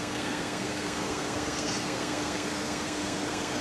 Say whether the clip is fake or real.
fake